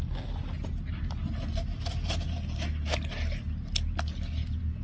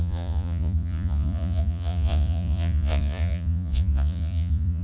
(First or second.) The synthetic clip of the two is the second